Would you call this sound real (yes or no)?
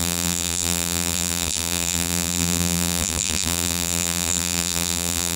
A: no